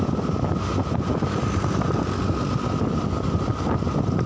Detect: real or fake real